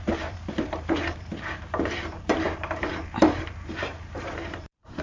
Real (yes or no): no